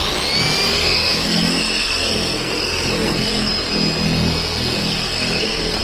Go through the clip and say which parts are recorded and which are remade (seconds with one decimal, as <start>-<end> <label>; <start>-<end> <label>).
0.0-0.7 recorded; 0.7-3.5 remade; 3.5-4.8 recorded; 4.8-5.8 remade